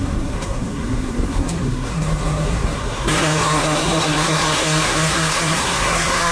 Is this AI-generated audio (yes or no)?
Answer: yes